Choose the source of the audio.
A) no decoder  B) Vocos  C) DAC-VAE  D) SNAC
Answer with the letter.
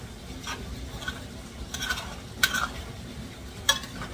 A